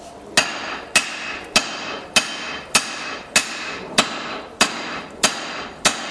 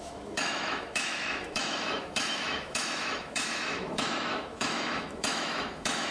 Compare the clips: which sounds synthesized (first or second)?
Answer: second